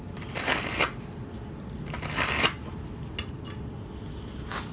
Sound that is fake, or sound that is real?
real